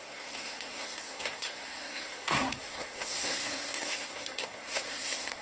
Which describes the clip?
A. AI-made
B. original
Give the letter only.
A